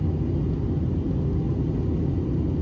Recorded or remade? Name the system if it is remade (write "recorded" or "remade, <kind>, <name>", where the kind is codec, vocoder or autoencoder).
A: recorded